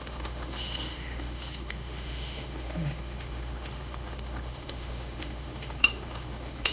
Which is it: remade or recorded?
remade